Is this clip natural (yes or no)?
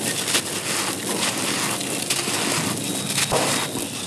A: yes